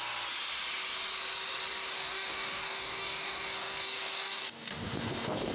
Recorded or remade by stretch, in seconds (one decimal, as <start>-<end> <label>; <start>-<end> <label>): 0.0-1.9 recorded; 1.9-5.5 remade